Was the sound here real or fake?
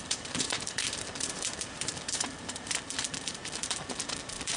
fake